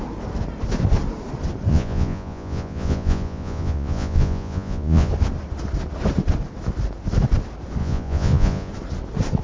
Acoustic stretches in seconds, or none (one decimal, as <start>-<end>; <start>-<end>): 0.0-1.7; 5.1-7.8; 8.7-9.4